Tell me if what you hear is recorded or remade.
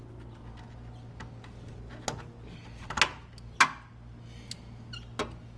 recorded